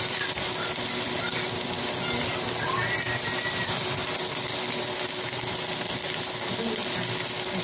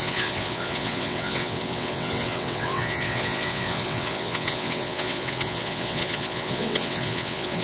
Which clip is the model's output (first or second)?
second